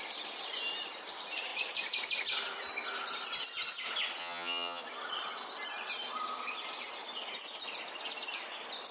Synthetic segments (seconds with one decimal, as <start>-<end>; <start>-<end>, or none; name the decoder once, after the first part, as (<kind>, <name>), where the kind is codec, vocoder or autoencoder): 4.2-4.8 (vocoder, HiFi-GAN)